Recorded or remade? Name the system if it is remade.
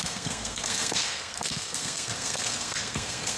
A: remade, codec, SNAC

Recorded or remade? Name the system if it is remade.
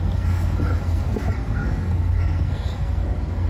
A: remade, codec, SNAC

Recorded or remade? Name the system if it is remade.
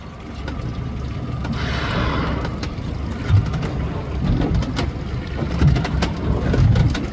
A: recorded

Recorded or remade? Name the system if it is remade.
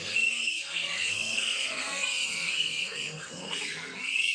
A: remade, codec, SNAC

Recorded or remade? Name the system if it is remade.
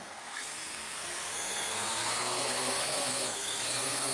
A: remade, codec, SNAC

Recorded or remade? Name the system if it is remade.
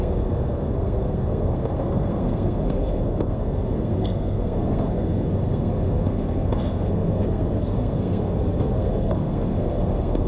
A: remade, codec, SNAC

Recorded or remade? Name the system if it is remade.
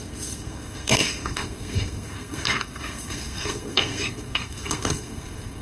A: remade, codec, SNAC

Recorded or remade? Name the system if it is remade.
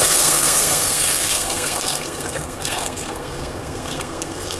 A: remade, codec, SNAC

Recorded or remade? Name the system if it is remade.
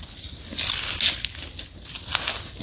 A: recorded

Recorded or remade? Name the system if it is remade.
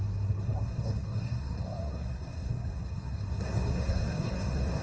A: remade, codec, SNAC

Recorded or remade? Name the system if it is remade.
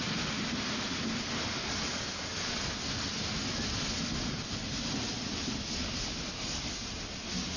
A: recorded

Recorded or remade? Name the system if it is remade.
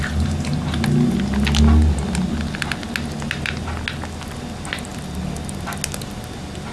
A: recorded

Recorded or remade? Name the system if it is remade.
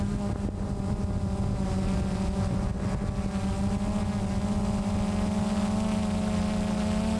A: recorded